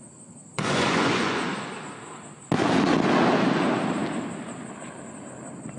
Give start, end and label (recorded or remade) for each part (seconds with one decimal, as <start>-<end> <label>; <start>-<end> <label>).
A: 0.0-0.5 recorded; 0.5-1.5 remade; 1.5-5.8 recorded